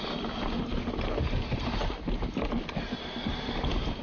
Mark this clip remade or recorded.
recorded